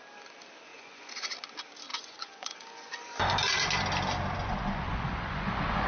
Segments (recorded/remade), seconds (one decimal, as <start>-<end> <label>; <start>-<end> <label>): 0.0-0.7 recorded; 0.7-1.3 remade; 1.3-1.9 recorded; 1.9-2.9 remade; 2.9-4.4 recorded; 4.4-5.9 remade

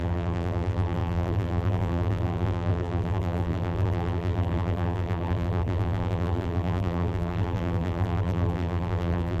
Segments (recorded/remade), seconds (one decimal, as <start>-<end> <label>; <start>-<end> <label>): 0.0-9.4 remade

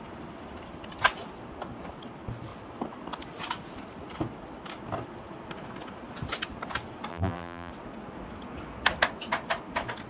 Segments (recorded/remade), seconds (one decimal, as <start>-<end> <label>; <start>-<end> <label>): 0.0-7.1 recorded; 7.1-7.7 remade; 7.7-10.1 recorded

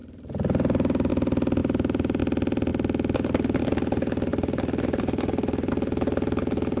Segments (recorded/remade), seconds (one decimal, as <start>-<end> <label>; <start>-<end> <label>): 0.0-1.1 remade; 1.1-1.6 recorded; 1.6-2.2 remade; 2.2-4.3 recorded; 4.3-5.7 remade; 5.7-6.8 recorded

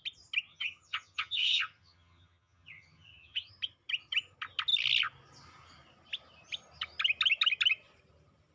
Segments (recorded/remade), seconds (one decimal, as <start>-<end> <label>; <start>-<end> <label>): 0.0-0.5 recorded; 0.5-3.5 remade; 3.5-8.5 recorded

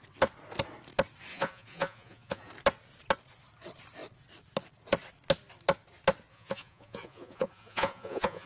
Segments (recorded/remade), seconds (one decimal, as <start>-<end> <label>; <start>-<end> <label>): 0.0-1.3 recorded; 1.3-2.5 remade; 2.5-6.3 recorded; 6.3-8.5 remade